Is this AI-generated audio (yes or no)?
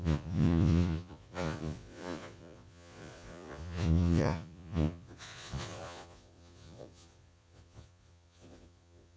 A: yes